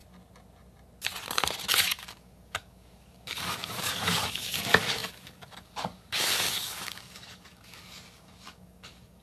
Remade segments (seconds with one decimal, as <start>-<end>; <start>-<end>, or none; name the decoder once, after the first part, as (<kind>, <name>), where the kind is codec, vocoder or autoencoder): 1.8-9.2 (codec, DAC)